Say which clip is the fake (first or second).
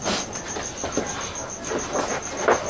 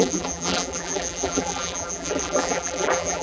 second